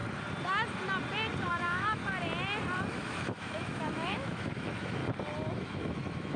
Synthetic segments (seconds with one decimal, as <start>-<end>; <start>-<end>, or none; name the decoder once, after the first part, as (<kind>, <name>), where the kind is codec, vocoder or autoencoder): 1.5-2.0 (autoencoder, DAC-VAE); 2.9-5.0; 5.5-6.4